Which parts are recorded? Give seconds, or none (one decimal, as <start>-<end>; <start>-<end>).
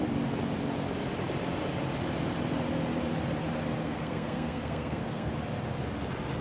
0.0-3.8; 5.3-6.4